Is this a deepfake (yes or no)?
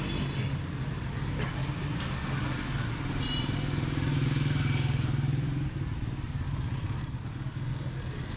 no